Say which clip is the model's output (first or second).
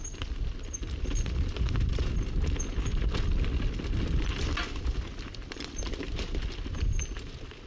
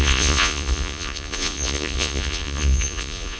second